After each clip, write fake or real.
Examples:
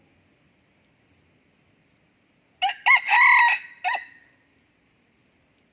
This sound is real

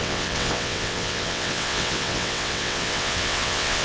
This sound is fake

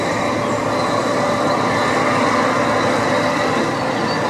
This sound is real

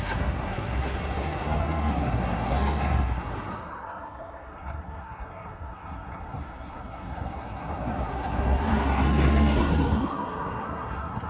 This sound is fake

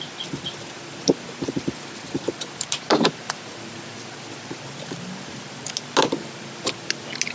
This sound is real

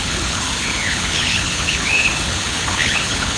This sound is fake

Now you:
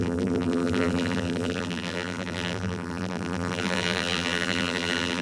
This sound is fake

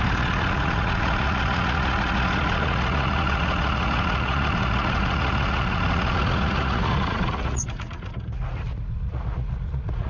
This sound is fake